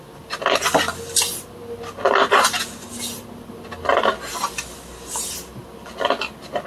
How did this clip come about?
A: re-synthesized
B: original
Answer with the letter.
B